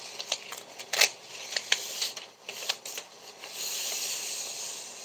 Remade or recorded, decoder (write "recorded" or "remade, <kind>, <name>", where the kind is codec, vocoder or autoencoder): recorded